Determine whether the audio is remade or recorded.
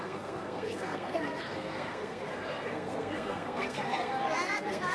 remade